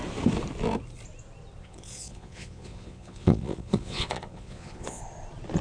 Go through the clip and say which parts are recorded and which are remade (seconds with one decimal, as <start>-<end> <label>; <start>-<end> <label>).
0.0-1.6 recorded; 1.6-5.0 remade; 5.0-5.6 recorded